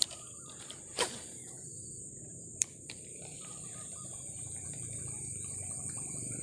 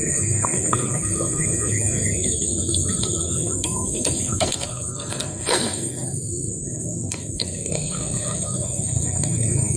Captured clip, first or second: first